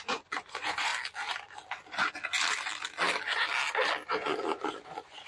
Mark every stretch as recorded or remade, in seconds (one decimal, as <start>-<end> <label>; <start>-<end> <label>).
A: 0.0-0.9 remade; 0.9-4.1 recorded; 4.1-5.3 remade